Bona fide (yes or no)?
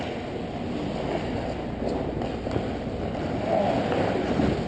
yes